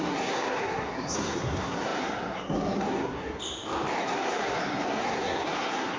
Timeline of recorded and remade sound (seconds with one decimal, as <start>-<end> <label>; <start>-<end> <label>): 0.0-3.4 remade; 3.4-4.0 recorded; 4.0-6.0 remade